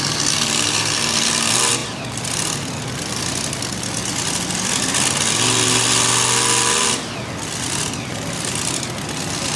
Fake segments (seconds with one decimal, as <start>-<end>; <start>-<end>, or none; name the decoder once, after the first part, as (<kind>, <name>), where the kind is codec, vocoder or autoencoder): none